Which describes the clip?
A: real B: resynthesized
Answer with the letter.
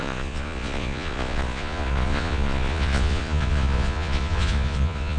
B